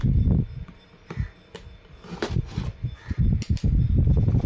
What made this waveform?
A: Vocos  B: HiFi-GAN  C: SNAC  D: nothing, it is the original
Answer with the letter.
D